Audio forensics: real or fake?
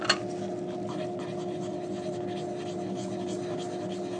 real